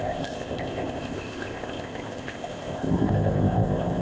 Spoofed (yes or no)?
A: yes